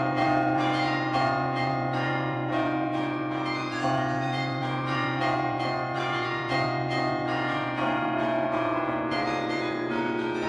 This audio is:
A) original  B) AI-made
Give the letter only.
B